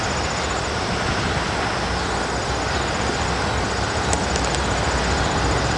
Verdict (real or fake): real